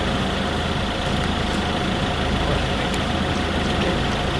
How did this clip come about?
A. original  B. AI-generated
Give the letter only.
A